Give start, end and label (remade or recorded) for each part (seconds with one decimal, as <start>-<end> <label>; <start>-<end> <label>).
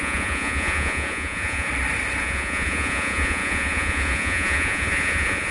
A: 0.0-1.7 remade; 1.7-2.2 recorded; 2.2-5.5 remade